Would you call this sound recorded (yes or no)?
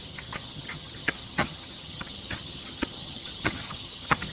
no